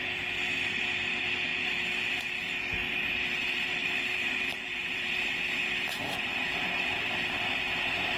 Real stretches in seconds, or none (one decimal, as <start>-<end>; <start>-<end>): 0.0-3.8; 5.2-8.2